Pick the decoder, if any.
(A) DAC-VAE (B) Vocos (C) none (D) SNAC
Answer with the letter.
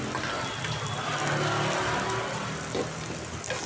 C